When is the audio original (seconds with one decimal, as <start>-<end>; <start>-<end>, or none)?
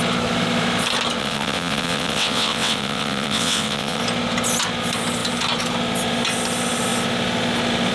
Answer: 0.0-1.2; 4.0-7.9